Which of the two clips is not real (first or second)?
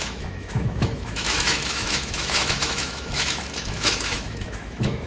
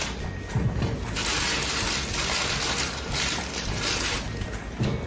first